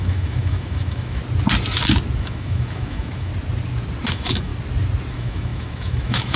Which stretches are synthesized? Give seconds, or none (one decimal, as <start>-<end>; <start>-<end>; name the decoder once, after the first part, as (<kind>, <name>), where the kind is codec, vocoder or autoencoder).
0.0-1.2 (autoencoder, DAC-VAE); 2.2-3.3; 4.1-4.5; 5.1-6.4